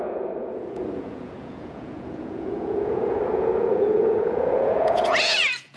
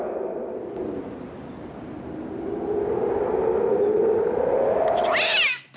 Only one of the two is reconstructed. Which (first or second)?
first